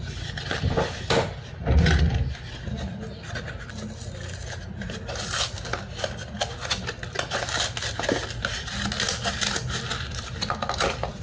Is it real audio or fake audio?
real